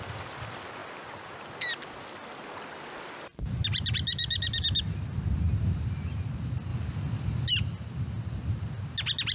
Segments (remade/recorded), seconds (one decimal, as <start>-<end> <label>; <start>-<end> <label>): 0.0-9.3 recorded